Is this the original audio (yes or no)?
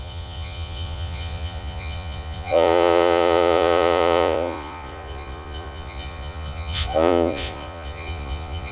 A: no